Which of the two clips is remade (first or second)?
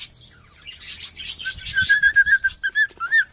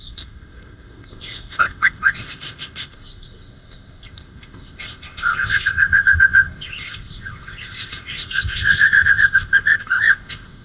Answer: second